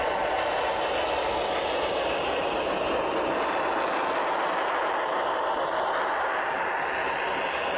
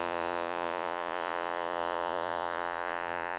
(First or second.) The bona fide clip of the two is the first